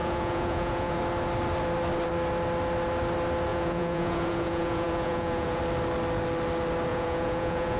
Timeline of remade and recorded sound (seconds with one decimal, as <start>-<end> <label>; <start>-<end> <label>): 0.0-1.0 remade; 1.0-3.5 recorded; 3.5-5.6 remade; 5.6-6.9 recorded; 6.9-7.8 remade